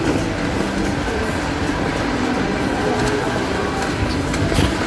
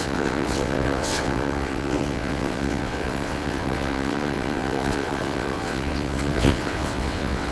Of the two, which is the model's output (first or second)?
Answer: second